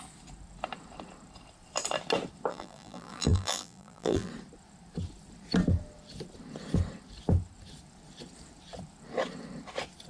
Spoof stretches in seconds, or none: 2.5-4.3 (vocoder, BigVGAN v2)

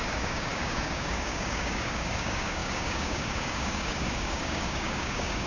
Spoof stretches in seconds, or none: 0.0-5.5 (codec, DAC)

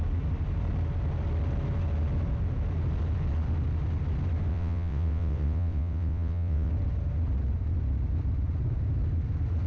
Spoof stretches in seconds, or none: 4.5-6.7 (vocoder, WaveNeXt)

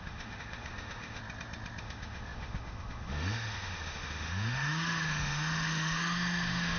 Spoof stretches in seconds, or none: 0.0-1.2 (autoencoder, DAC-VAE); 1.8-6.8

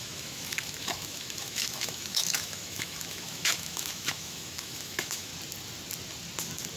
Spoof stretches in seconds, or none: 0.0-5.3 (autoencoder, DAC-VAE)